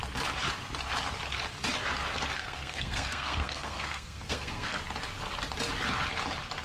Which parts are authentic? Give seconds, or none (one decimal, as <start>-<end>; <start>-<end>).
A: 0.0-2.4; 4.8-6.6